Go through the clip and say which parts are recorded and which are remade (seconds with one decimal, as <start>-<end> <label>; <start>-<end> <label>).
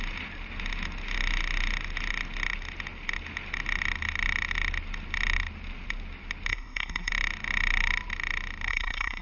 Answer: 0.0-6.5 recorded; 6.5-7.1 remade; 7.1-8.7 recorded; 8.7-9.2 remade